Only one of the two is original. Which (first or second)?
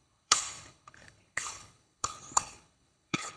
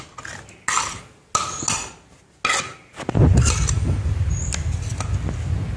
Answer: second